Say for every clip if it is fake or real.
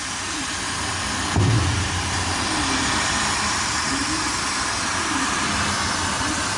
real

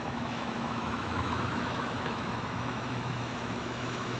fake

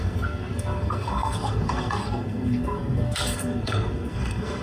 fake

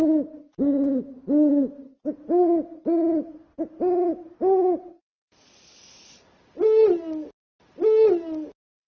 real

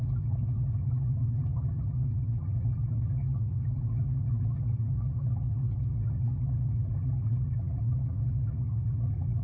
fake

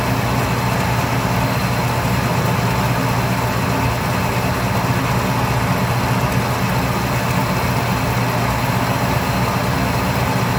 real